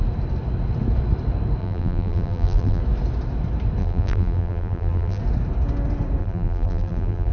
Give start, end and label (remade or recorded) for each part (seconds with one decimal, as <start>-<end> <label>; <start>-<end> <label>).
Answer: 0.0-1.6 recorded; 1.6-2.8 remade; 2.8-3.8 recorded; 3.8-5.2 remade; 5.2-6.2 recorded; 6.2-7.3 remade